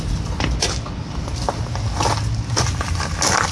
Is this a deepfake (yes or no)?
no